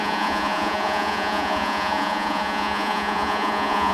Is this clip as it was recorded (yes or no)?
no